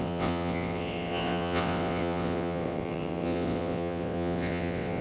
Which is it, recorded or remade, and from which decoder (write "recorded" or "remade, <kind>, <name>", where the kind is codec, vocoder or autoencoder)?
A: remade, vocoder, WaveNeXt